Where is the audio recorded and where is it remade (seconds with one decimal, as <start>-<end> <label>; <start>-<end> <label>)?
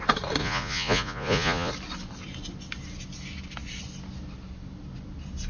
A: 0.0-0.4 recorded; 0.4-1.7 remade; 1.7-5.5 recorded